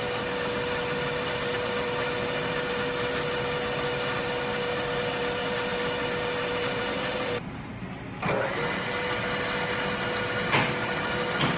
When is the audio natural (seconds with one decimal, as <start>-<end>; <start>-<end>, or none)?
0.0-11.6